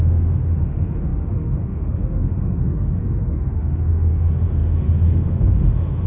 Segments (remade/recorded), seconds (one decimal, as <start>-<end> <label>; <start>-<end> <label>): 0.0-6.1 remade